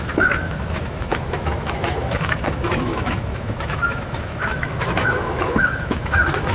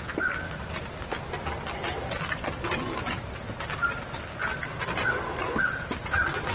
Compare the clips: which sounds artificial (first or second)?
first